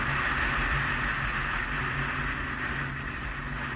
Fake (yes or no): no